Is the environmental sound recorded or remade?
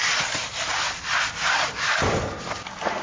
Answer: recorded